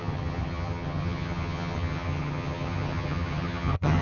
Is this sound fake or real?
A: fake